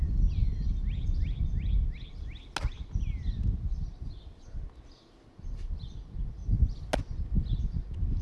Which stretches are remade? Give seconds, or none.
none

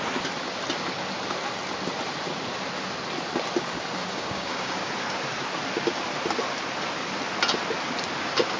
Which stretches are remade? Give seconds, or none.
4.0-4.9 (codec, DAC)

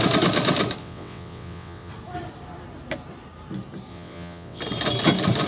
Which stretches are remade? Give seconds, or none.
0.8-1.9 (vocoder, WaveNeXt); 3.9-4.6

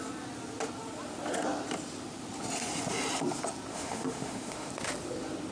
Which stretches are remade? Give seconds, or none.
3.7-4.7 (autoencoder, DAC-VAE)

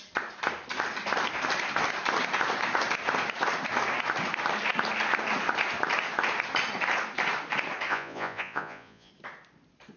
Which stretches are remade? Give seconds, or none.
7.9-9.1 (vocoder, Vocos)